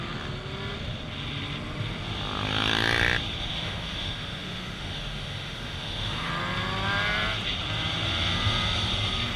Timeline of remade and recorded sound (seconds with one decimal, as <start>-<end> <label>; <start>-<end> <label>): 0.0-3.5 recorded; 3.5-6.3 remade; 6.3-9.4 recorded